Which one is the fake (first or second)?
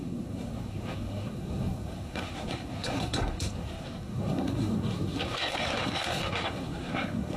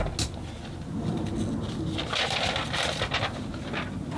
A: first